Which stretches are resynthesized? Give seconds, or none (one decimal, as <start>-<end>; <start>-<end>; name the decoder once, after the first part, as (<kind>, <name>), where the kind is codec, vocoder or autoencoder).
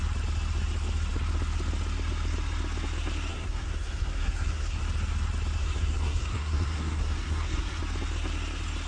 3.3-4.8 (codec, SNAC); 5.6-7.8